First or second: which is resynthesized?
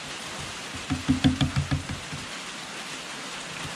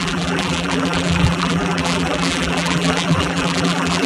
second